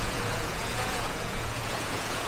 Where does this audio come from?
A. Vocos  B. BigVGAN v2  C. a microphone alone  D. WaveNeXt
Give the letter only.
A